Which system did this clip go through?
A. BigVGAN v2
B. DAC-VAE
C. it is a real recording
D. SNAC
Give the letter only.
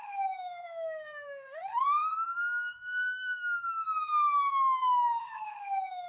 B